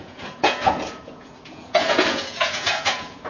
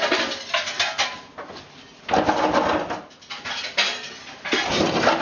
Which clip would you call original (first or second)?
second